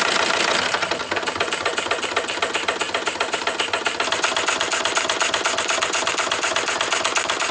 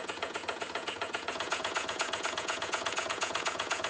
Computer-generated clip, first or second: second